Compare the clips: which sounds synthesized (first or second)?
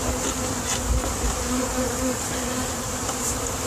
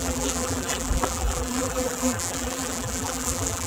second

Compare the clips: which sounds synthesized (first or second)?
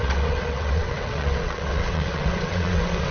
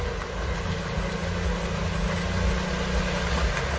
first